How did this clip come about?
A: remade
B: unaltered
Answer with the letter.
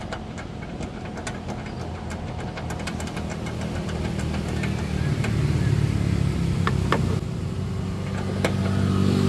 B